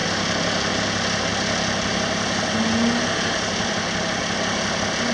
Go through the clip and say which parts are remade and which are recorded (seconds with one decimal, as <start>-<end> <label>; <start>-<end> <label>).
0.0-5.1 recorded

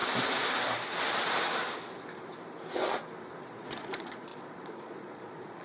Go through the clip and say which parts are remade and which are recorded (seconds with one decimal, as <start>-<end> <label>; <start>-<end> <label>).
0.0-3.4 recorded; 3.4-5.6 remade

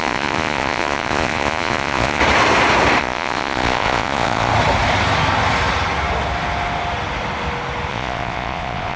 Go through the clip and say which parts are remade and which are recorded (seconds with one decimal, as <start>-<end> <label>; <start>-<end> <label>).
0.0-2.2 remade; 2.2-3.0 recorded; 3.0-4.5 remade; 4.5-7.9 recorded; 7.9-9.0 remade